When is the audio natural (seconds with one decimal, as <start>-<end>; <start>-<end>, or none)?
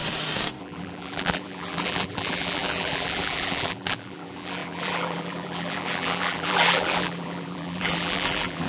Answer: 0.0-0.6